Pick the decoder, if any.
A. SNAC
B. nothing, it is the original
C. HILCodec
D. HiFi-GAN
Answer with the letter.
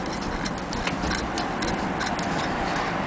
B